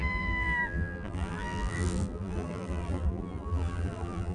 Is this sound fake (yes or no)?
yes